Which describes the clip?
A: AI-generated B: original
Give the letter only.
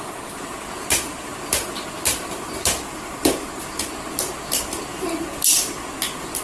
B